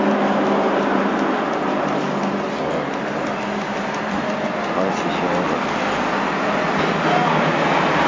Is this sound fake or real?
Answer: real